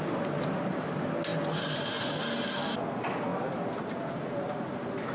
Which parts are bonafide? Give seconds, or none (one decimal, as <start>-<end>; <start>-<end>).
0.0-5.1